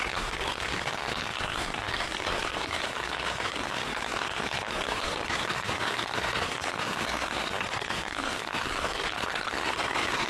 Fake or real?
fake